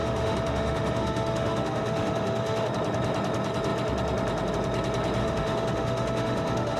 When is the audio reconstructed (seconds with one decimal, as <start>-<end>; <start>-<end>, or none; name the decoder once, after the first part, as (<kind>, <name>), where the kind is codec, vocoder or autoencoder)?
0.0-2.7 (autoencoder, DAC-VAE); 5.2-6.8